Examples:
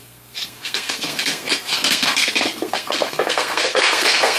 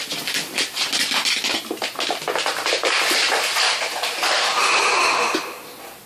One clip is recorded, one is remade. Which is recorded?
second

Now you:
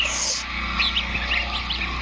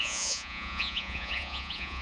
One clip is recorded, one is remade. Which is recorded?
first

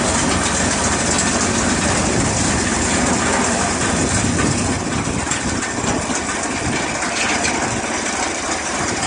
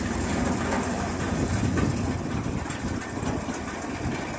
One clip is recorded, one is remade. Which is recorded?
second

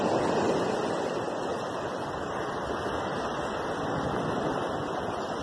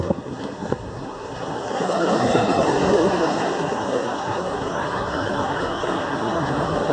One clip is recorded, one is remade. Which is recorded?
first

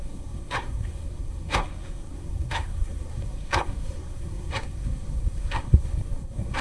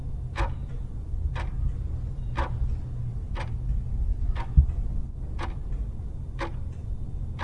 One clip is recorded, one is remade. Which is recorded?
second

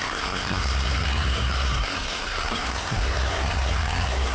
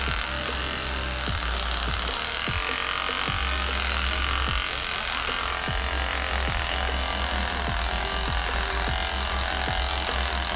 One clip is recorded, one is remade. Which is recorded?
second